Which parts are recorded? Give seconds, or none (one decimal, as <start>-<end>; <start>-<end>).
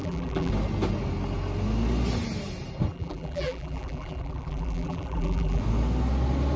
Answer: 0.5-2.9; 5.6-6.6